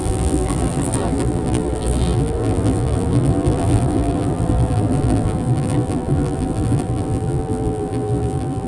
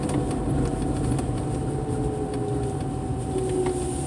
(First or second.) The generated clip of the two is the first